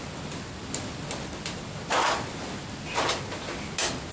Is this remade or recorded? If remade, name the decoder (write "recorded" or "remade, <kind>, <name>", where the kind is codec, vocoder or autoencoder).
recorded